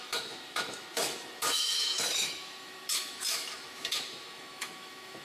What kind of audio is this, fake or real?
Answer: fake